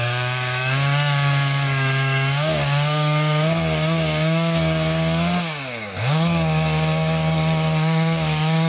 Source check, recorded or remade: remade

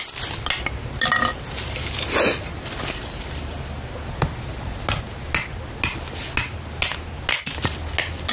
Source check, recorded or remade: recorded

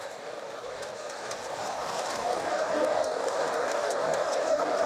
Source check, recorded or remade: remade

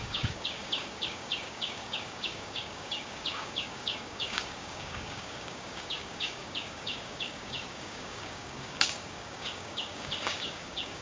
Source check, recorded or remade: remade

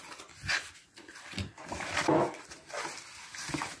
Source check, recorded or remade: recorded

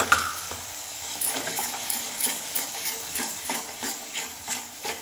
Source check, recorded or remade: remade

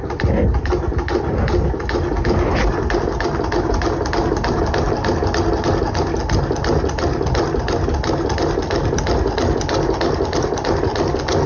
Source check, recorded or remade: recorded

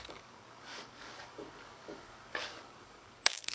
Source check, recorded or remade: remade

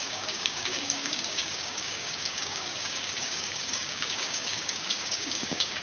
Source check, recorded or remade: remade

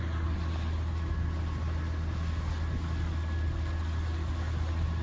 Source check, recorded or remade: recorded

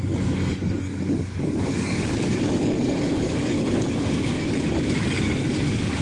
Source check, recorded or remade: remade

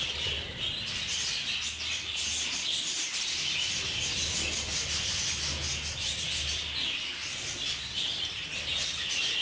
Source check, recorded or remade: recorded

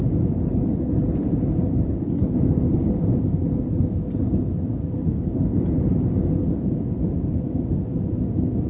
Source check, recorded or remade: recorded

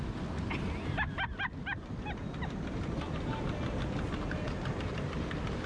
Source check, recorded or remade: recorded